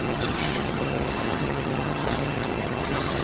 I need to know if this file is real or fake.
fake